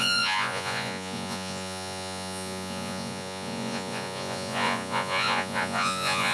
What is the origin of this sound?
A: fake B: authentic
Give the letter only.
A